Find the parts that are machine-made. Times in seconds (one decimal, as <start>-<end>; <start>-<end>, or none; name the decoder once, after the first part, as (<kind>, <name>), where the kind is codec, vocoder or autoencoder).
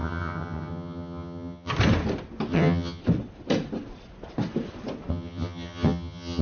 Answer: 0.0-1.7 (vocoder, HiFi-GAN); 2.5-3.0; 5.1-6.4